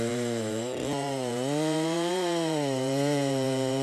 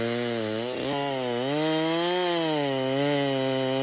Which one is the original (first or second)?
second